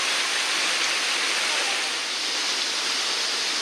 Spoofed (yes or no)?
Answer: no